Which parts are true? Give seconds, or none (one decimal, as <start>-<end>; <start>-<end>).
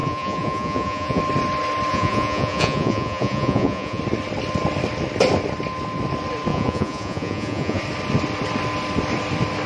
1.2-1.9; 4.0-6.5; 7.8-9.7